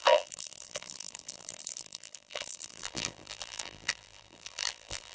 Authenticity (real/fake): fake